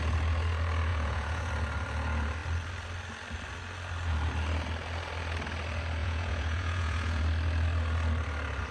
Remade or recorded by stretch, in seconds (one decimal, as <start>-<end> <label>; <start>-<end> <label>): 0.0-0.9 recorded; 0.9-1.5 remade; 1.5-6.0 recorded; 6.0-7.2 remade; 7.2-8.7 recorded

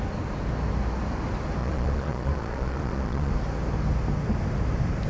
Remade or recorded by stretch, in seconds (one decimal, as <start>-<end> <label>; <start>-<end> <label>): 0.0-1.6 recorded; 1.6-3.3 remade; 3.3-5.1 recorded

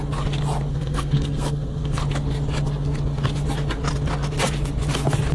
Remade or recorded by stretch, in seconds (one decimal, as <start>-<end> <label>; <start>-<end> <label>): 0.0-0.7 recorded; 0.7-2.0 remade; 2.0-5.3 recorded

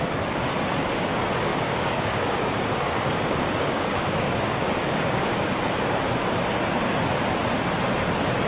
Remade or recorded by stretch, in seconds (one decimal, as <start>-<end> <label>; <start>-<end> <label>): 0.0-1.5 recorded; 1.5-5.6 remade; 5.6-8.5 recorded

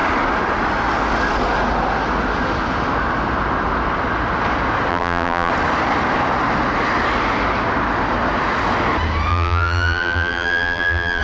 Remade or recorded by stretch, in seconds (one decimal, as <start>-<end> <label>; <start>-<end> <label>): 0.0-4.9 recorded; 4.9-5.5 remade; 5.5-9.3 recorded; 9.3-11.2 remade

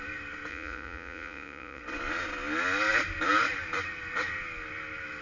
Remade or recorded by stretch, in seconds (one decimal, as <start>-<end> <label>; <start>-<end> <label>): 0.0-0.5 recorded; 0.5-1.8 remade; 1.8-5.2 recorded

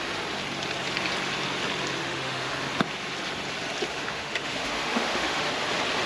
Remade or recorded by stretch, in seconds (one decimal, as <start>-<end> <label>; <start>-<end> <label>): 0.0-2.0 recorded; 2.0-2.5 remade; 2.5-3.9 recorded; 3.9-5.5 remade; 5.5-6.1 recorded